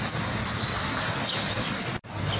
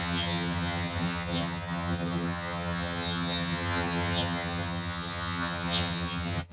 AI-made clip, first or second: second